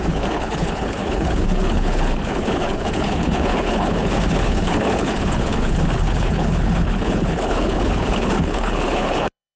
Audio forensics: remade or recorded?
remade